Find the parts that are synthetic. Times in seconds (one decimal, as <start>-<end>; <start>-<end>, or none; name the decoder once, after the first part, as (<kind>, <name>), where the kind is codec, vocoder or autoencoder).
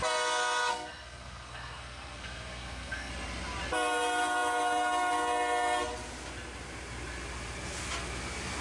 0.7-3.1 (codec, SNAC)